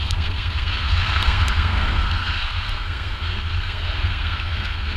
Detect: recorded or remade remade